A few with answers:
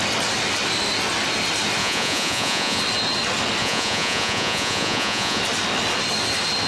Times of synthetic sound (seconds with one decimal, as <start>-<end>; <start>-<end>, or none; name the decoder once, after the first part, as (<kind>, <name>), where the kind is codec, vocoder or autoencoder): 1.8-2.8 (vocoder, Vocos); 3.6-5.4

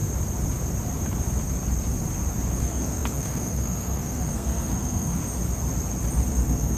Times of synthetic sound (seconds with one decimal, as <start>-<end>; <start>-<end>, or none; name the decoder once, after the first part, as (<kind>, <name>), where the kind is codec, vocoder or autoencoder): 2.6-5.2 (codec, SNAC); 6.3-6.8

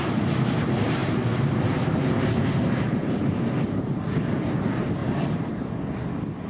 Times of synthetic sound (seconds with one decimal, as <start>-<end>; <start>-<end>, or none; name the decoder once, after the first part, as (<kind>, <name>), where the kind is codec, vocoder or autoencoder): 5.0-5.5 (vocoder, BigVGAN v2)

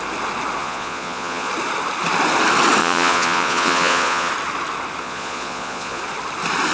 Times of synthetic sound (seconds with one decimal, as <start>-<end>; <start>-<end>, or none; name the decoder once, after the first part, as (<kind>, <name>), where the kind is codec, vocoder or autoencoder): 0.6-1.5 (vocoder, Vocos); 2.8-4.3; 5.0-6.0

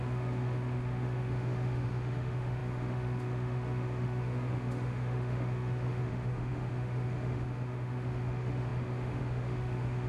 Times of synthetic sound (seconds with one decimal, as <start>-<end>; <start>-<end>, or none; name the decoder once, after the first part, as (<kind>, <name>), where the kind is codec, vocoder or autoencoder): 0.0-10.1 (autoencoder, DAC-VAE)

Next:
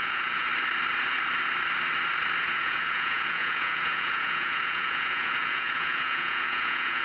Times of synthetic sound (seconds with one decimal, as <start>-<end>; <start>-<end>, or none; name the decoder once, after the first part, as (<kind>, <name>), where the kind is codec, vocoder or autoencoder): 0.0-0.5 (vocoder, Vocos); 2.5-7.0